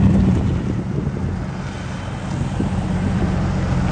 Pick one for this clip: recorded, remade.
recorded